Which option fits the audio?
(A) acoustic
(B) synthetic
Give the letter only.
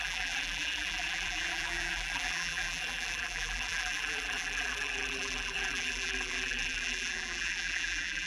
B